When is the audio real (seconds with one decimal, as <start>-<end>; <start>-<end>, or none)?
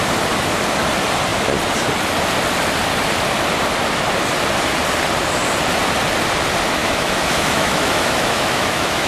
0.0-6.8